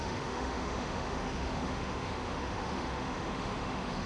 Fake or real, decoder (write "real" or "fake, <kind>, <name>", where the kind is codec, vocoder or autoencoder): fake, autoencoder, DAC-VAE